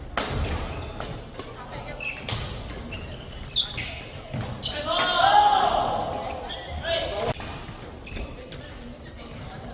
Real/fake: real